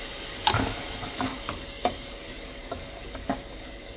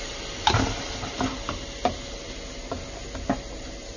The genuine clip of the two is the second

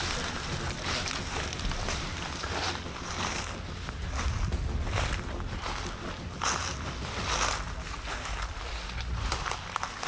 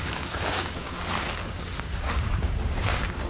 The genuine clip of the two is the first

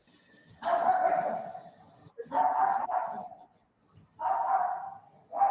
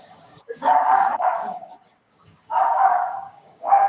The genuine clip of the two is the first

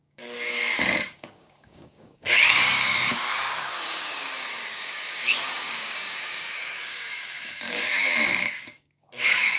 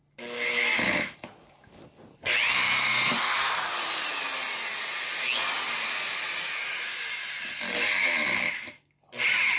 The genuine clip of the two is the second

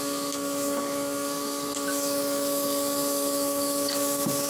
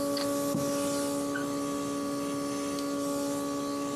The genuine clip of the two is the second